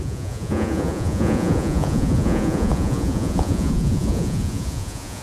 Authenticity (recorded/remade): remade